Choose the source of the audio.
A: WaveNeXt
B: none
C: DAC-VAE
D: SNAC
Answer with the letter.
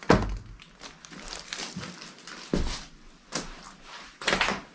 B